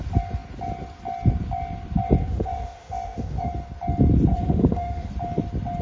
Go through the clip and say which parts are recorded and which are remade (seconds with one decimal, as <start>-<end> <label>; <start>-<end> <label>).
0.0-2.2 recorded; 2.2-3.5 remade; 3.5-4.3 recorded; 4.3-5.1 remade; 5.1-5.8 recorded